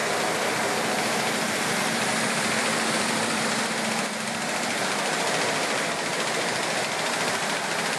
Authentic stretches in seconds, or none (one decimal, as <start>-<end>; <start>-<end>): 0.0-1.8